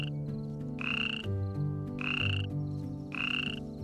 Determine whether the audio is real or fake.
real